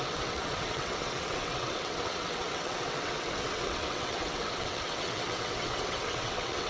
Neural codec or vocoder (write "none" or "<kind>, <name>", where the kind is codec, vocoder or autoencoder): vocoder, WaveNeXt